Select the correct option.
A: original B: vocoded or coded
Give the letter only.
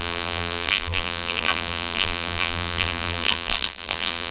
B